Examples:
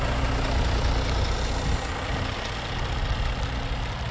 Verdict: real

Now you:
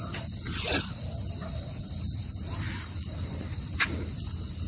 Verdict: real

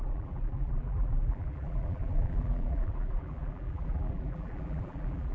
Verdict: fake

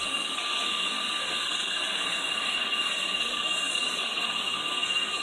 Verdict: fake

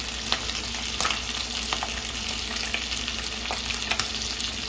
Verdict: real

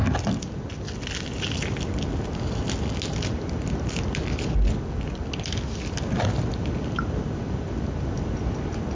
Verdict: real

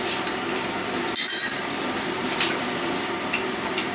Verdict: fake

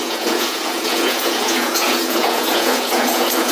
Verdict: fake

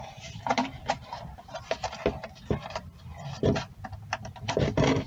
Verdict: fake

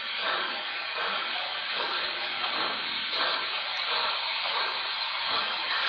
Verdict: fake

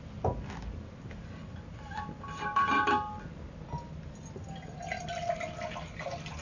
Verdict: real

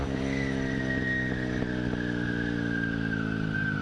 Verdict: real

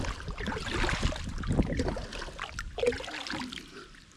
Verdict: real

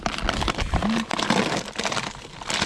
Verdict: fake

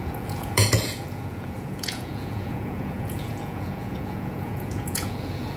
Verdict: fake